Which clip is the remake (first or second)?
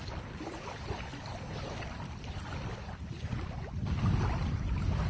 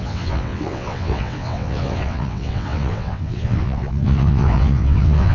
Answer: second